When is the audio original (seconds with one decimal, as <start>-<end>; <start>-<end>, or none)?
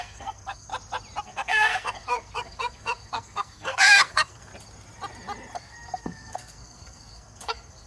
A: 0.7-1.2; 4.5-5.6